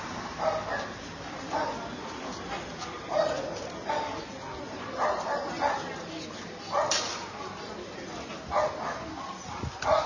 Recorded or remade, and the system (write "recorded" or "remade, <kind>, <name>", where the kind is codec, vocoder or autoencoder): recorded